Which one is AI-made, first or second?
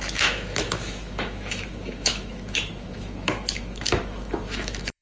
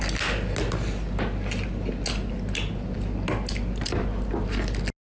first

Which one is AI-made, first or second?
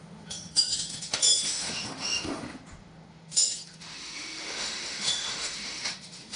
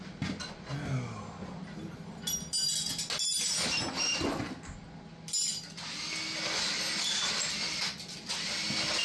first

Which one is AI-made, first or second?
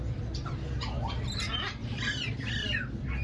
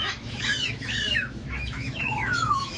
second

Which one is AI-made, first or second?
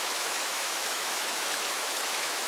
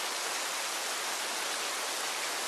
first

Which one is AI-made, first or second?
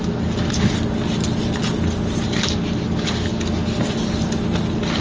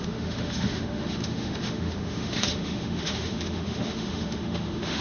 second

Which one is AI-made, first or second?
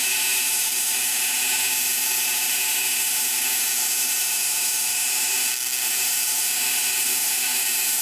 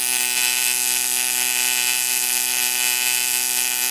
first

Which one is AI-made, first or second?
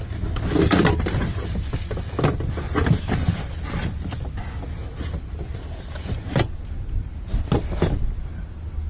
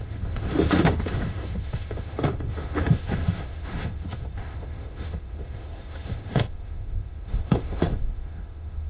second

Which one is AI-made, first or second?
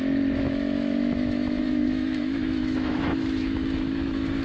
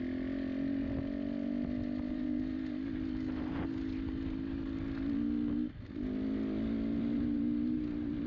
first